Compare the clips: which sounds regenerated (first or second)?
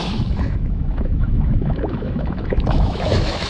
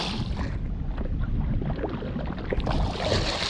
first